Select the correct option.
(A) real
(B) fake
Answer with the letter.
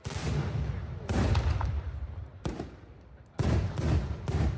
A